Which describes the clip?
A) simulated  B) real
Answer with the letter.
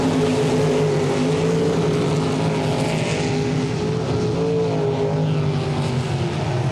B